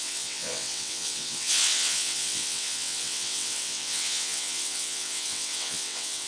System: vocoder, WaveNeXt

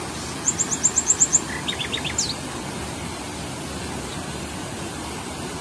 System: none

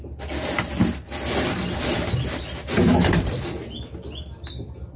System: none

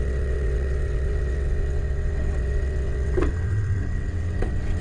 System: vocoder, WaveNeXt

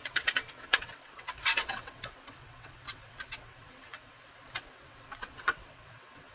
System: vocoder, WaveNeXt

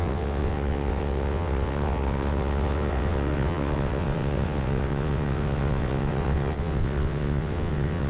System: vocoder, WaveNeXt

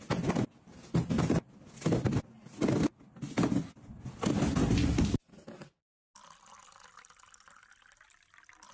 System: none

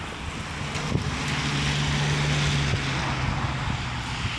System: none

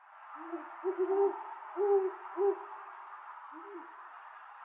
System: none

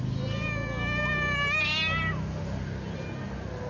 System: none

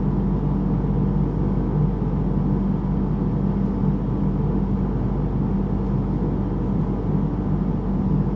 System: none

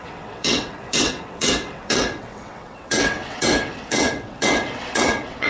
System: vocoder, WaveNeXt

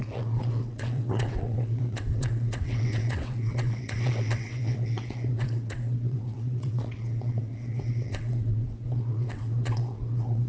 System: vocoder, WaveNeXt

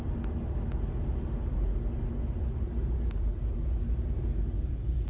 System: none